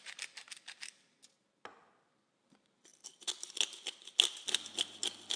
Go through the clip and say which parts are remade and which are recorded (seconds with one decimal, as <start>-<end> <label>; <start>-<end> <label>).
0.0-5.4 recorded